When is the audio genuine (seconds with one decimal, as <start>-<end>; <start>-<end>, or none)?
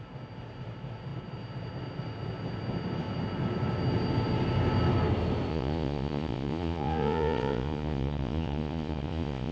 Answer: 0.0-5.5